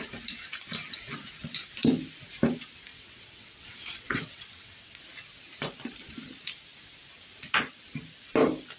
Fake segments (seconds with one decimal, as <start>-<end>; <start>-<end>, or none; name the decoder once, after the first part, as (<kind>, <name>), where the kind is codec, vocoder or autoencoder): 2.9-5.0 (vocoder, WaveNeXt)